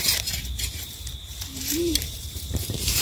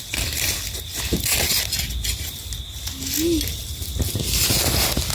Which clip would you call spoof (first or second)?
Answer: first